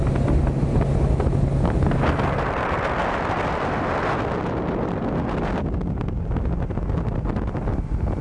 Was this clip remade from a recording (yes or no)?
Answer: no